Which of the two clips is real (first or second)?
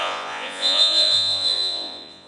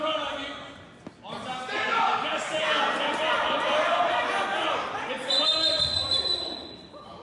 second